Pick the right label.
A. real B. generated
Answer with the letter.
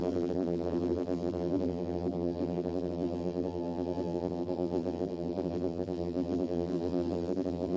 B